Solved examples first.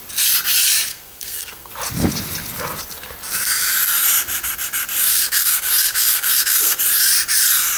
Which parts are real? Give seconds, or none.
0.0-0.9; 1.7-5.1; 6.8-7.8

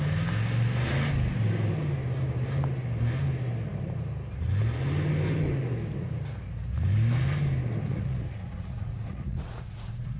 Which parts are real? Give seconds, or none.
0.0-7.9

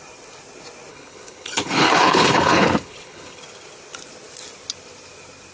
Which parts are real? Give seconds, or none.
0.0-0.9; 3.4-5.5

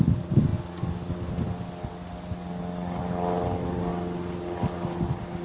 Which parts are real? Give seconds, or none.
0.0-5.4

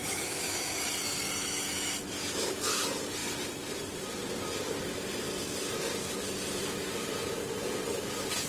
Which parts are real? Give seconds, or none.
0.8-1.4; 2.8-8.5

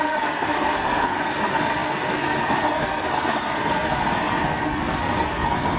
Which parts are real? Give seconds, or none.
none